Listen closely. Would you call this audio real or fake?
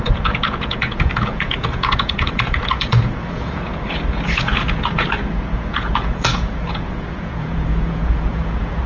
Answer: fake